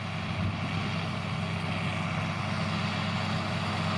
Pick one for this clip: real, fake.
real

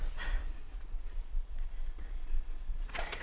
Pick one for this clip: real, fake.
fake